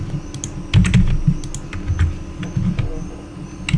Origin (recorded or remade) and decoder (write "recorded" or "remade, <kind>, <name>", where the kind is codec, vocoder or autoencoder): recorded